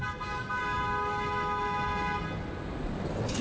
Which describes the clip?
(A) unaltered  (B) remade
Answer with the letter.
A